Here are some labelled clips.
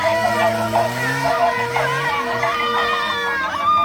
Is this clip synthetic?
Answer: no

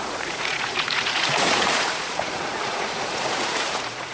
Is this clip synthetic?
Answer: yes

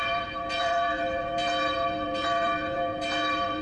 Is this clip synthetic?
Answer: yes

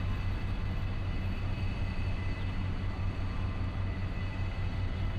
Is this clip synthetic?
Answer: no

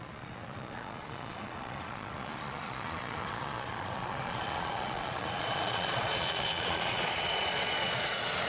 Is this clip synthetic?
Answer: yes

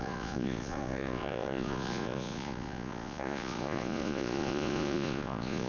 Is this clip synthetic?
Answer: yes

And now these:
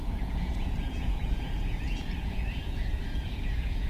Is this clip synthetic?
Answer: yes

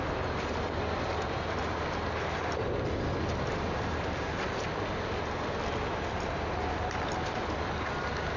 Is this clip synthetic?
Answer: no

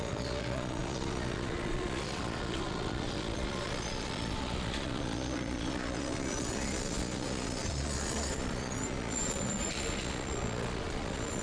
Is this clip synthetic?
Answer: yes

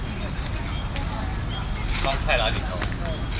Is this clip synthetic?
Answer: no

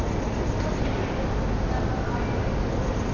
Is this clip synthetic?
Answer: no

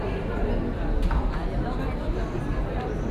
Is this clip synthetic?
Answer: no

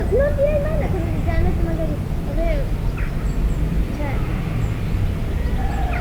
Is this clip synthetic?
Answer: no